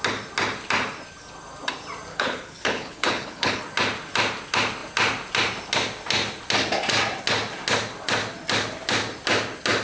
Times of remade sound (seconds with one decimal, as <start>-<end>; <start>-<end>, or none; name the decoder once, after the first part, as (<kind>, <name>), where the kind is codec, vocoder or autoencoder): 2.1-3.6 (codec, HILCodec)